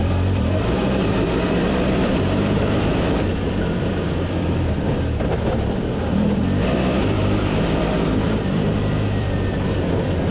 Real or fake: fake